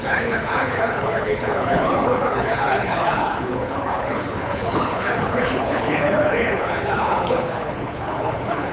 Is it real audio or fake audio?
fake